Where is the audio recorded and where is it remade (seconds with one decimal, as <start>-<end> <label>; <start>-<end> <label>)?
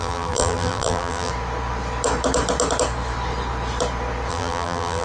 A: 0.0-1.3 remade; 1.3-4.3 recorded; 4.3-5.0 remade